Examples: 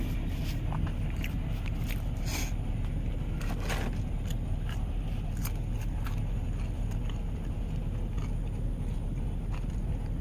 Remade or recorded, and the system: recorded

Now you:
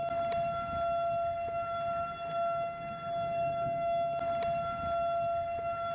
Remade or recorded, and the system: recorded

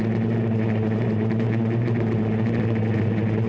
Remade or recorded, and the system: remade, vocoder, Vocos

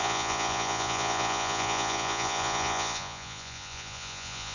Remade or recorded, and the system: remade, vocoder, Vocos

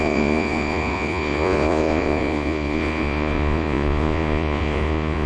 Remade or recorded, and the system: remade, vocoder, Vocos